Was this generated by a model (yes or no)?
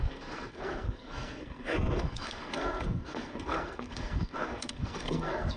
yes